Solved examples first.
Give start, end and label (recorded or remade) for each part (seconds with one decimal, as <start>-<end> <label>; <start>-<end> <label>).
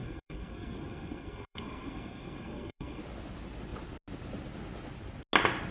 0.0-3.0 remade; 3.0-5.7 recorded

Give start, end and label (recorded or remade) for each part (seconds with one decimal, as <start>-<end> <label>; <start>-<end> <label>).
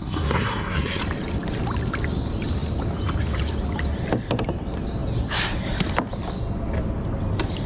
0.0-1.0 remade; 1.0-7.7 recorded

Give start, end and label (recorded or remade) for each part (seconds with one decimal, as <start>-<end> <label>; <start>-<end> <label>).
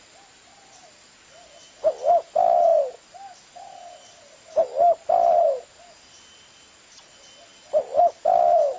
0.0-8.8 recorded